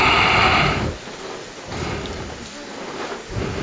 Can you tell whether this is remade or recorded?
recorded